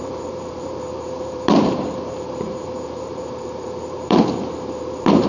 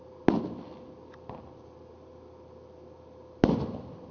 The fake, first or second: first